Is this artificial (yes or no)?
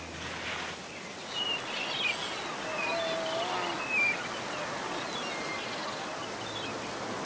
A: no